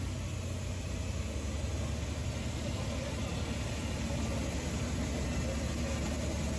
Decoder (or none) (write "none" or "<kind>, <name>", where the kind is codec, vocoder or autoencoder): none